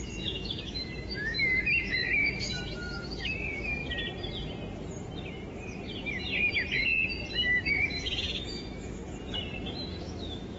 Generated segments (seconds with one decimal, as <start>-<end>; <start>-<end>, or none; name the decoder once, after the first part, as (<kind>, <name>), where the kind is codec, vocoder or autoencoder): 0.0-3.8 (autoencoder, DAC-VAE); 7.3-9.0; 10.0-10.6